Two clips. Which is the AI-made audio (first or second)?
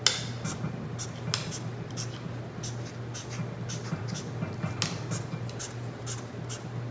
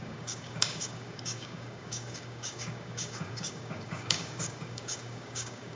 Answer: second